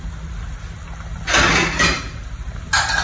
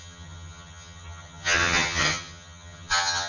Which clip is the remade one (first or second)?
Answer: second